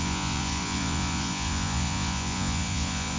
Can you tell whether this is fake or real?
fake